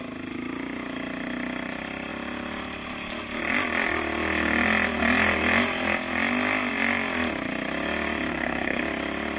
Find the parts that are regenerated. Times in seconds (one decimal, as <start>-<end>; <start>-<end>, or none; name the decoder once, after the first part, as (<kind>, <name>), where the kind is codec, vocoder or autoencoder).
8.3-8.8 (codec, SNAC)